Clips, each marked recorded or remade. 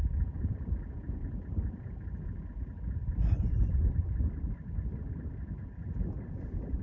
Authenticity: remade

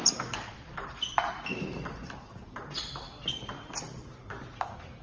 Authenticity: recorded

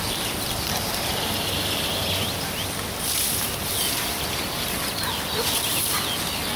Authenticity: recorded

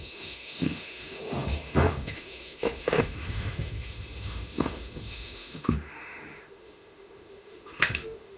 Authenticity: remade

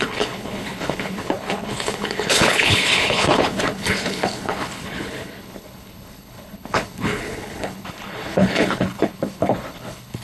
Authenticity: remade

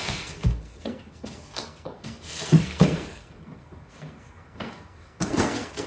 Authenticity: remade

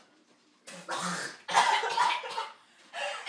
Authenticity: recorded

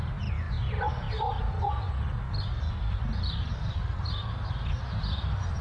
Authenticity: recorded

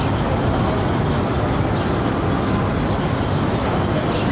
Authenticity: recorded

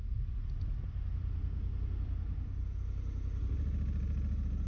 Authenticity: recorded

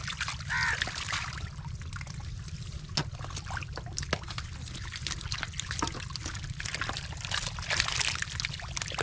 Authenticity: recorded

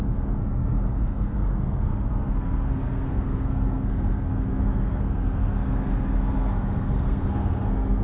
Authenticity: remade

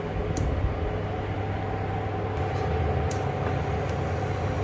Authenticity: recorded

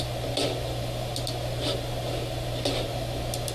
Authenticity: recorded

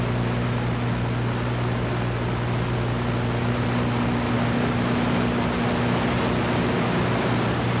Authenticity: recorded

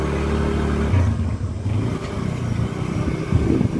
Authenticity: recorded